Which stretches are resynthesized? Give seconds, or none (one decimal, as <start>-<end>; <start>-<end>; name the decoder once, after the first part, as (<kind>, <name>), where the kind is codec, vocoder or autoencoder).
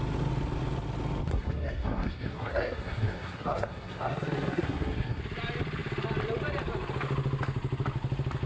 1.3-5.2 (codec, SNAC)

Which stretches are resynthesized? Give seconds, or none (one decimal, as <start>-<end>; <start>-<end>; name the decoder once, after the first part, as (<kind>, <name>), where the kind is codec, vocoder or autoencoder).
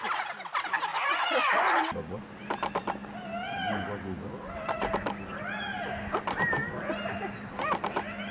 0.9-1.8 (vocoder, Vocos)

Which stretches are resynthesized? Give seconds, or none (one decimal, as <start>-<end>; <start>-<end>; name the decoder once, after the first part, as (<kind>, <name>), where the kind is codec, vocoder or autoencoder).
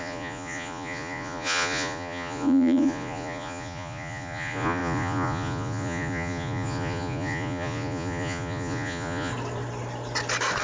0.0-9.3 (vocoder, Vocos)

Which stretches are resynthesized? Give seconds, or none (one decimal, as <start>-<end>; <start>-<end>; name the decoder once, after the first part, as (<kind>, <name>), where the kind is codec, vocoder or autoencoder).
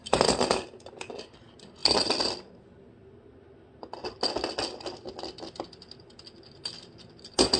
none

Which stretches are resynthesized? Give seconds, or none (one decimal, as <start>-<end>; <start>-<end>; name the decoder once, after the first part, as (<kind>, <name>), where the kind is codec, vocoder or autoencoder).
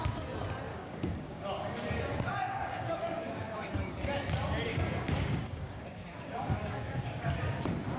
0.7-3.9 (codec, DAC); 4.7-7.3